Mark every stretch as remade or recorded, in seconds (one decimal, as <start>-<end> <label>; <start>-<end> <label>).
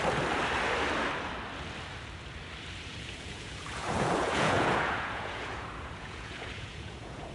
0.0-2.9 recorded; 2.9-7.3 remade